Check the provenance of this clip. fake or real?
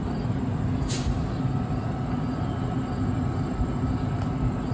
real